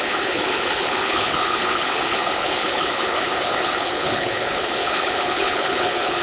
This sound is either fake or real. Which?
fake